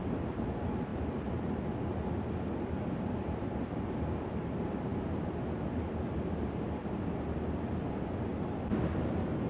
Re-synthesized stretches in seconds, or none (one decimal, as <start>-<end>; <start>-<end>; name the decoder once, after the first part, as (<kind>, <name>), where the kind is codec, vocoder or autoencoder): none